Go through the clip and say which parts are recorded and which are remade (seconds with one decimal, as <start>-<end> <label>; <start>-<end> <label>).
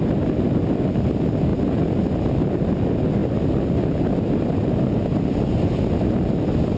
0.0-6.8 recorded